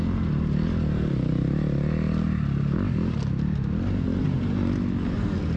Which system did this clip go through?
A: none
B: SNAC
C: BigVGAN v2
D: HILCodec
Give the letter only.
A